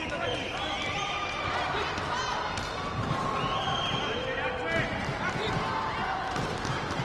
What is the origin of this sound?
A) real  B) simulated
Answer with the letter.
A